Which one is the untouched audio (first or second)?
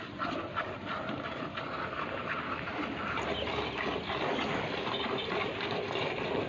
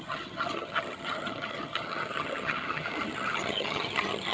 first